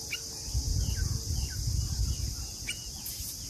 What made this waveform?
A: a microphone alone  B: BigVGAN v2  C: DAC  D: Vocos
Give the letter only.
A